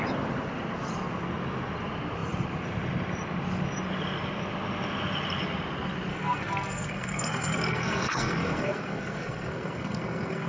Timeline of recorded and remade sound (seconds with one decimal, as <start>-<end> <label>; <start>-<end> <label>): 0.0-6.1 recorded; 6.1-10.5 remade